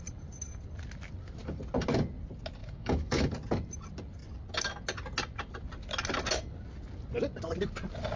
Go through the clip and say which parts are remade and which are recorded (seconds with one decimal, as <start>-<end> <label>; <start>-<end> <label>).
0.0-2.6 recorded; 2.6-3.3 remade; 3.3-8.2 recorded